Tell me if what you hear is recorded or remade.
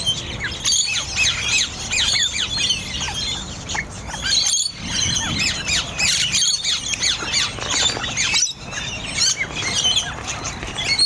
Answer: recorded